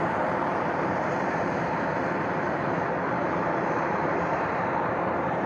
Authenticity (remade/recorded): remade